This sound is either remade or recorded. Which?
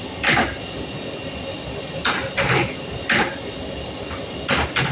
recorded